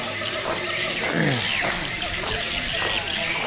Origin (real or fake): real